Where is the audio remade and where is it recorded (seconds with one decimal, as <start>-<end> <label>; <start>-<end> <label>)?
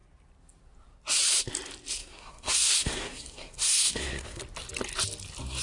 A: 0.0-2.0 recorded; 2.0-4.4 remade; 4.4-5.6 recorded